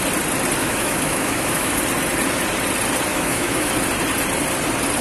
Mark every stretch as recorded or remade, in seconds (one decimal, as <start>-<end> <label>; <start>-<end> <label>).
0.0-0.6 recorded; 0.6-1.8 remade; 1.8-3.1 recorded; 3.1-3.7 remade; 3.7-5.0 recorded